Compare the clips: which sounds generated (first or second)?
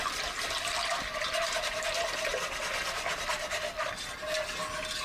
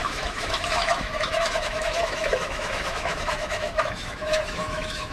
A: second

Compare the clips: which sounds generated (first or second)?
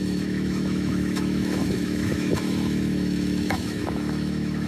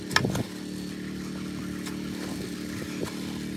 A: first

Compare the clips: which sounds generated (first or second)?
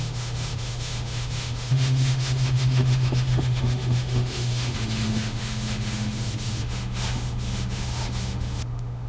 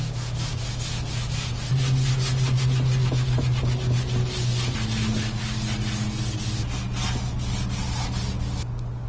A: first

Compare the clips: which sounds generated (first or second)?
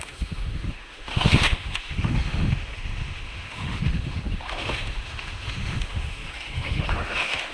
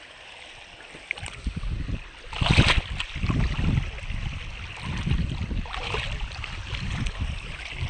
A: first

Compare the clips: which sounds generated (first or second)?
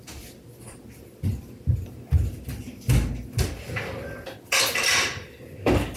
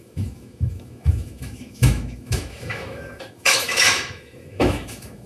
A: second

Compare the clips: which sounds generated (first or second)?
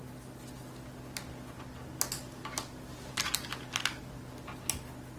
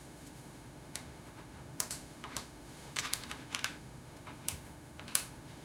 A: second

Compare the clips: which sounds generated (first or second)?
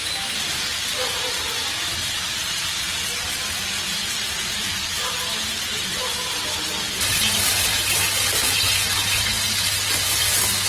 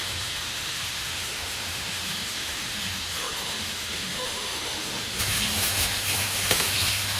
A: second